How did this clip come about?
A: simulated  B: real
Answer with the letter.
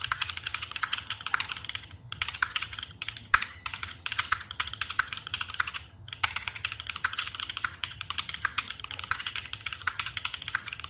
A